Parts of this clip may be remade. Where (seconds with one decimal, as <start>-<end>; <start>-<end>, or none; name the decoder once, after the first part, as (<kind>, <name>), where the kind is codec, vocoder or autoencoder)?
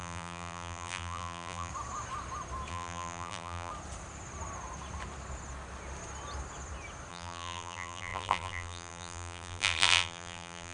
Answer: 0.0-1.7 (vocoder, BigVGAN v2); 2.7-3.7; 7.1-10.7